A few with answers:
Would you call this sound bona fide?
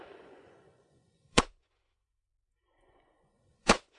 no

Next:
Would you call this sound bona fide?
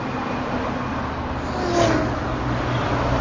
yes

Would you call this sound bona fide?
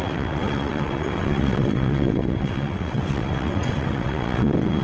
no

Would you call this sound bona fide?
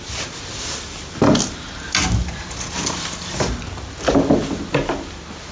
yes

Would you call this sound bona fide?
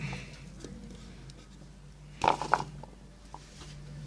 yes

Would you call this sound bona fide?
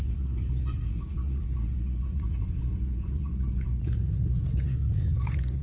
no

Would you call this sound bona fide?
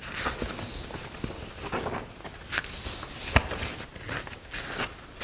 yes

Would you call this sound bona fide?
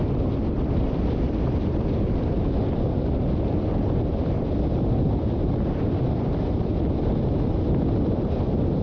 no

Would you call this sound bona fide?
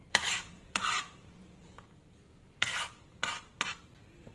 no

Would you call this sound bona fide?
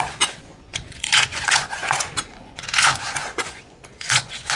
no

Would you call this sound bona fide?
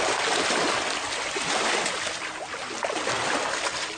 yes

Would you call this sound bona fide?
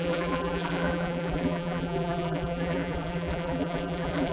no